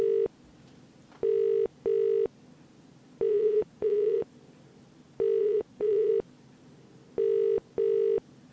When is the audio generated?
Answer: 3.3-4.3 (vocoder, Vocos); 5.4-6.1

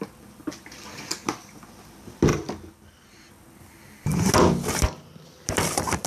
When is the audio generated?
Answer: none

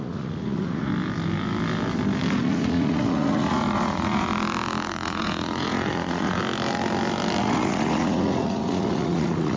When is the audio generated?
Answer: 0.0-0.9 (vocoder, Vocos); 2.3-4.3; 4.9-6.4; 7.4-9.6